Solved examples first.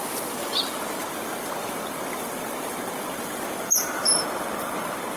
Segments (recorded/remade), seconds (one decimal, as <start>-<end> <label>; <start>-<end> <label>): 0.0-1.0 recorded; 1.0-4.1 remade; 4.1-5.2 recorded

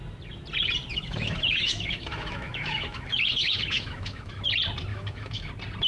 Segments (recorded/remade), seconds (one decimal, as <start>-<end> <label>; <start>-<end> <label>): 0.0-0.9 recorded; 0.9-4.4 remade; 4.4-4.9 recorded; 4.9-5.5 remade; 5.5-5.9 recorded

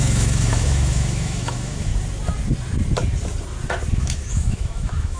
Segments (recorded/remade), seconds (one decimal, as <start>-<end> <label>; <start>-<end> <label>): 0.0-1.9 remade; 1.9-4.0 recorded; 4.0-5.2 remade

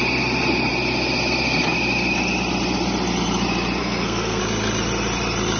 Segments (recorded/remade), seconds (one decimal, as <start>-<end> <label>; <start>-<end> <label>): 0.0-3.8 recorded; 3.8-4.4 remade; 4.4-5.6 recorded

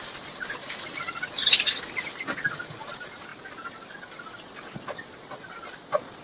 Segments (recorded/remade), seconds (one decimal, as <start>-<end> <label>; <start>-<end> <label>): 0.0-6.2 recorded

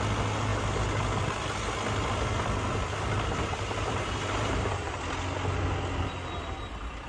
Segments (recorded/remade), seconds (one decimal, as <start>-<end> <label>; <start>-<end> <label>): 0.0-3.4 recorded; 3.4-5.0 remade; 5.0-7.1 recorded

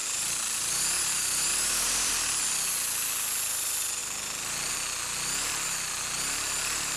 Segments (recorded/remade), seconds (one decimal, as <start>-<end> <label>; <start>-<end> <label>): 0.0-1.5 recorded; 1.5-2.1 remade; 2.1-4.0 recorded; 4.0-4.7 remade; 4.7-7.0 recorded

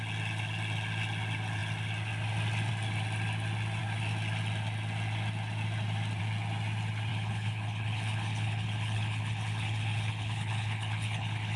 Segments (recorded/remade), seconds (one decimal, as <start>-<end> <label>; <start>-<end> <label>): 0.0-7.1 recorded; 7.1-11.6 remade